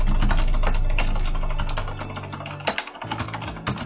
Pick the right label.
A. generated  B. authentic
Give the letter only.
B